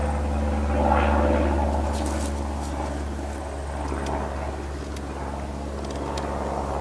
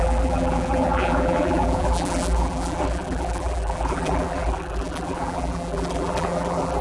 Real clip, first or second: first